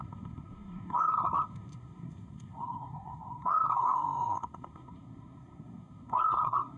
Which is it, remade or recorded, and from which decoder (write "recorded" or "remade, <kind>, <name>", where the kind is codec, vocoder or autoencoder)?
remade, codec, SNAC